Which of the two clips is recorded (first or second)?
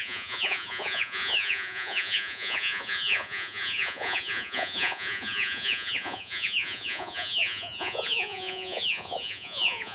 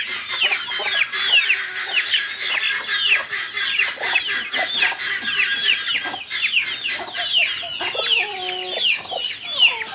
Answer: second